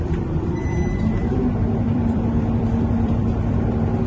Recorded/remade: remade